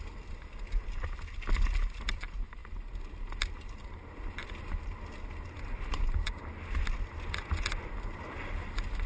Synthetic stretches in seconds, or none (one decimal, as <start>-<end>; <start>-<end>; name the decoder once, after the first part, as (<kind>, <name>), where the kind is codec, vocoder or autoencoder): none